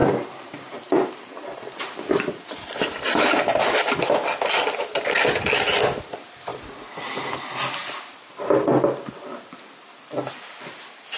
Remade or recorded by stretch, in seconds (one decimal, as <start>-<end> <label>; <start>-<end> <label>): 0.0-3.6 remade; 3.6-11.2 recorded